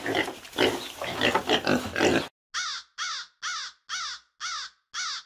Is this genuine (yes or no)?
yes